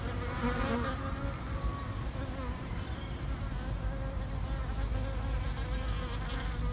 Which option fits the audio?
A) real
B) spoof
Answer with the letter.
A